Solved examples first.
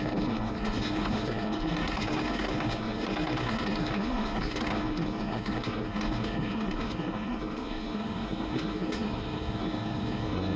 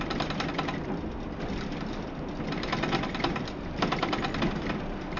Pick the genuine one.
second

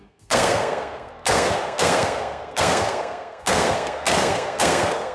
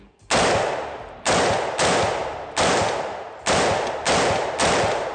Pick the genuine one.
second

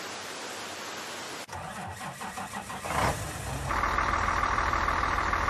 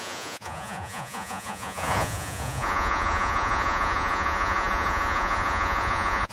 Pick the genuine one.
first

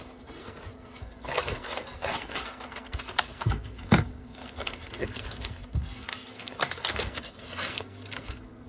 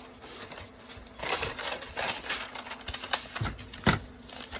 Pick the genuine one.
second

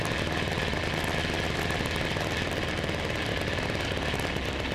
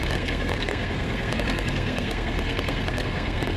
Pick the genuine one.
first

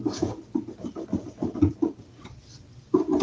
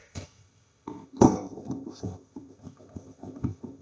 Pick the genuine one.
first